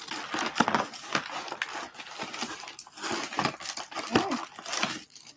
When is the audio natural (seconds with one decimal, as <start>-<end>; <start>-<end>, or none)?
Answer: 0.0-5.4